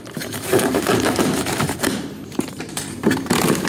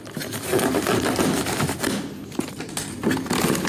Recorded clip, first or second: second